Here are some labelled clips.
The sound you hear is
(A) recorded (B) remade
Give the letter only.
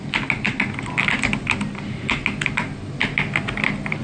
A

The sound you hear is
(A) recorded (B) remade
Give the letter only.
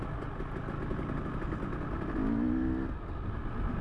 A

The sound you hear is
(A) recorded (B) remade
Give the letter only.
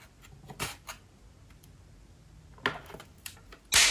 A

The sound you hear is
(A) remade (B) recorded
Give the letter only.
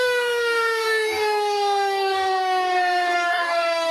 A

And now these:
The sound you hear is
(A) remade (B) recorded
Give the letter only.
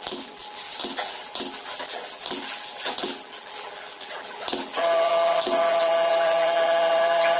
A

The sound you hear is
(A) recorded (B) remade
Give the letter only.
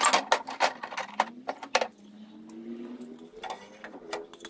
A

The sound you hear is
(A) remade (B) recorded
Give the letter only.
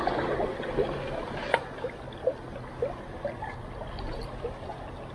B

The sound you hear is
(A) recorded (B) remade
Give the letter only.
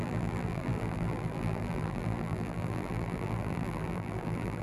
B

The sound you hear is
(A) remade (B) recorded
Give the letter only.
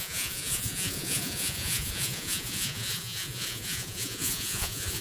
A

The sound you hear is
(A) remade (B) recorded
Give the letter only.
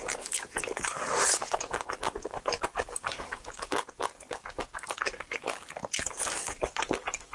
A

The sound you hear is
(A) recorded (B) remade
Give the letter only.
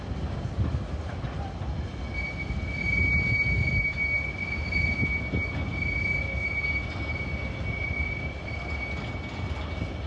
A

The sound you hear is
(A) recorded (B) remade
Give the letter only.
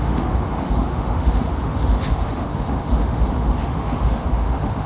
B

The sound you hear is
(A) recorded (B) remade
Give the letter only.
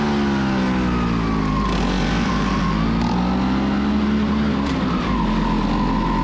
A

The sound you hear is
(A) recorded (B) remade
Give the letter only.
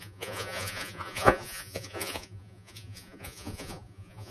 B